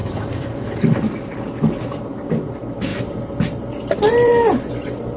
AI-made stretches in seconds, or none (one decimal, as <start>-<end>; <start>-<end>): 0.0-5.2